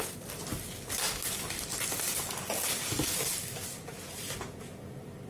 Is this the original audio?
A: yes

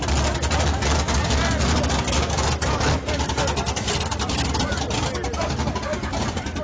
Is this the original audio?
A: yes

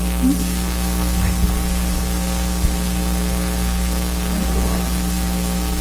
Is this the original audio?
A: no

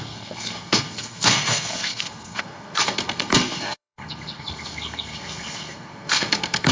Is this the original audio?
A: no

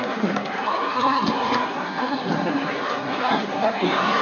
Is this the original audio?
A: no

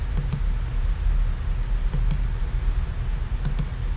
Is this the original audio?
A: yes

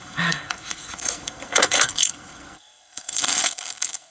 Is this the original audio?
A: no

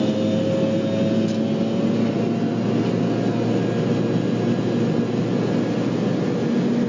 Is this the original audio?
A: yes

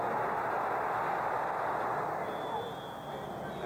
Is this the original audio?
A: yes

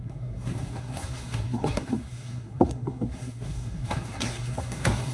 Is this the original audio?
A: no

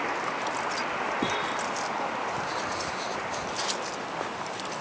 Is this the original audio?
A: yes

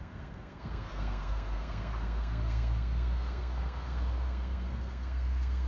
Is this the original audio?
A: no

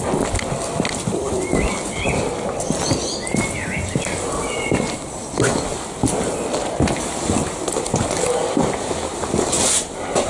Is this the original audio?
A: yes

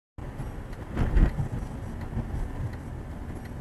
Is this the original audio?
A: yes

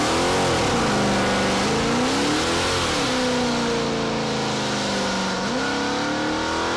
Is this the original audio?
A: yes